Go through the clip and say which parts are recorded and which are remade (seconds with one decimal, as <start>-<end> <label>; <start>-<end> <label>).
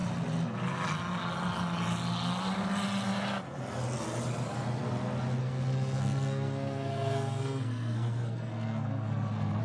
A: 0.0-5.4 recorded; 5.4-9.6 remade